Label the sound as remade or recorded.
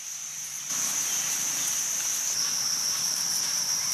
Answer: remade